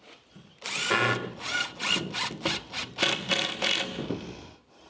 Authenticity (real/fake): real